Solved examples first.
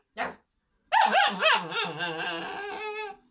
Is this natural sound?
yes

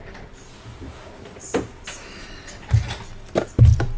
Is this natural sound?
yes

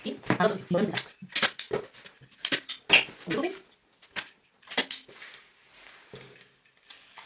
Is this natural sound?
yes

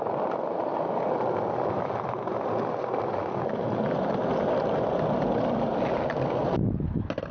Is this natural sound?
yes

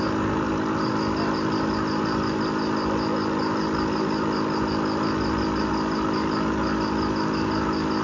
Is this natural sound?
yes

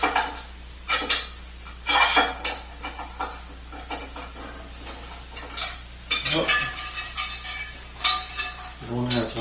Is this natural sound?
yes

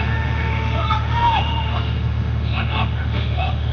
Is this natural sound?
no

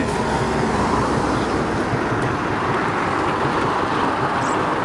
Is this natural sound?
yes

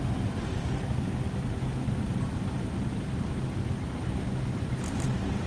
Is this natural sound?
yes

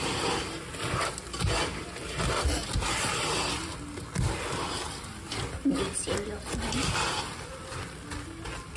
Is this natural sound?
yes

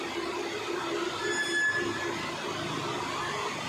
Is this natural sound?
yes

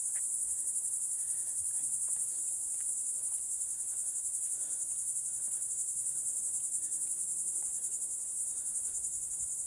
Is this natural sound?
no